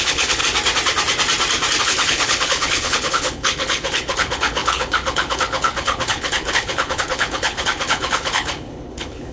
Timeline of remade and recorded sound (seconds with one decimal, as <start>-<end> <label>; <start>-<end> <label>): 0.0-0.4 remade; 0.4-1.8 recorded; 1.8-9.3 remade